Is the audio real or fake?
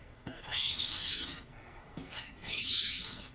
fake